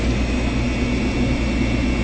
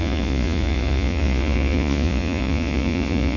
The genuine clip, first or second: first